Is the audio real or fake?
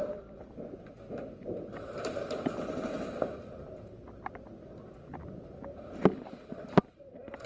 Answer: real